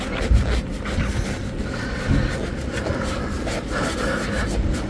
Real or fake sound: real